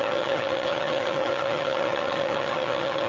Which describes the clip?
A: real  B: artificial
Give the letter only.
B